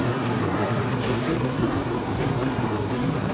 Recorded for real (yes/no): no